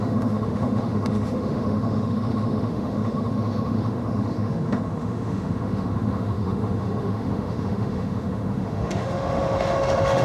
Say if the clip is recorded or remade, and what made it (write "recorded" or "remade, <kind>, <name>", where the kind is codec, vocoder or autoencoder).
remade, autoencoder, DAC-VAE